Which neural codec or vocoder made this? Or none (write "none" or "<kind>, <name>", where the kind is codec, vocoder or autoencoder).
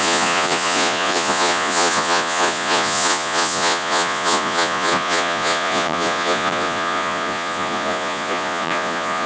vocoder, Vocos